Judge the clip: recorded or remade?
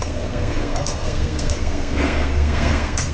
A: remade